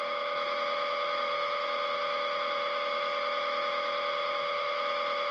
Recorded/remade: remade